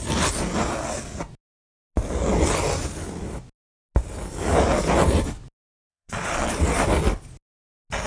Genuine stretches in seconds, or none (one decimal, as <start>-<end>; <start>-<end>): 0.0-5.9; 6.5-8.1